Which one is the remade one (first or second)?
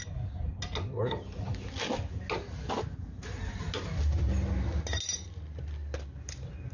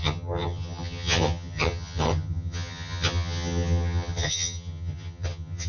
second